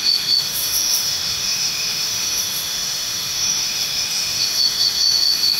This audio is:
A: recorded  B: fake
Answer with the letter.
B